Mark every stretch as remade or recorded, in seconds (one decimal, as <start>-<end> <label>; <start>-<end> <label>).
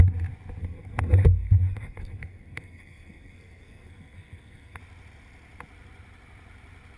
0.0-0.6 recorded; 0.6-4.8 remade; 4.8-7.0 recorded